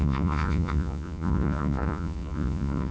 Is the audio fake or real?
fake